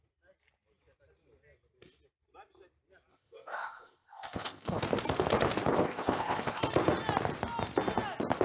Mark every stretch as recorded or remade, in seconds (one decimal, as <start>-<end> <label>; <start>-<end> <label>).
0.0-3.1 recorded; 3.1-4.8 remade; 4.8-5.7 recorded; 5.7-6.6 remade; 6.6-8.4 recorded